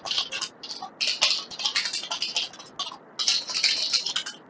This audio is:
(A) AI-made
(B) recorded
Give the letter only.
B